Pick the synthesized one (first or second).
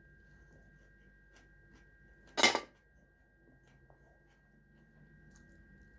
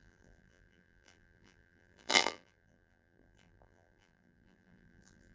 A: second